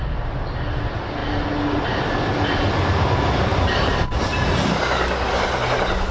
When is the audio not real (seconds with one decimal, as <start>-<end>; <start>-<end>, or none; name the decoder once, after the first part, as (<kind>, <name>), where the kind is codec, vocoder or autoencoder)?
none